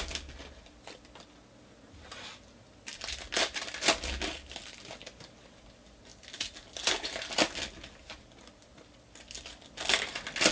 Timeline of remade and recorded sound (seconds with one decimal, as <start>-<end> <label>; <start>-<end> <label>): 0.0-10.5 recorded